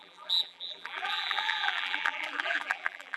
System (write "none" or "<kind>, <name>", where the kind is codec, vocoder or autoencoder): vocoder, BigVGAN v2